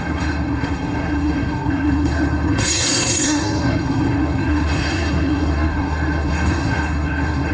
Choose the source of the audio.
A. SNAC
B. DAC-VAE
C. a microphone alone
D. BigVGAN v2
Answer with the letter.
A